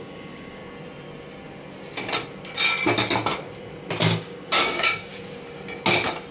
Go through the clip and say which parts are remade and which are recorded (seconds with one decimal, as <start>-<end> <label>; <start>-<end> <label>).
0.0-0.6 remade; 0.6-4.0 recorded; 4.0-5.1 remade; 5.1-6.3 recorded

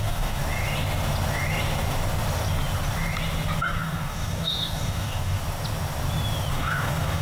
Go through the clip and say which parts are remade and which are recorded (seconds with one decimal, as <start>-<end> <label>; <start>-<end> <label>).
0.0-0.4 remade; 0.4-3.6 recorded; 3.6-5.4 remade; 5.4-6.5 recorded; 6.5-7.2 remade

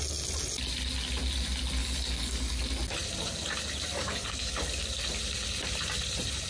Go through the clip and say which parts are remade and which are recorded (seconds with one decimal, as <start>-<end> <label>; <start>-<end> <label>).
0.0-1.8 recorded; 1.8-2.6 remade; 2.6-3.9 recorded; 3.9-4.5 remade; 4.5-6.5 recorded